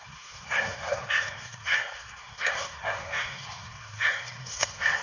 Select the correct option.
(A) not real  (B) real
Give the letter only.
A